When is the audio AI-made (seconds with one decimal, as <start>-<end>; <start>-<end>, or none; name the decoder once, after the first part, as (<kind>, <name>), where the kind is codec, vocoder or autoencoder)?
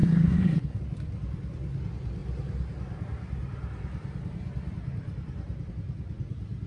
0.0-0.8 (codec, SNAC)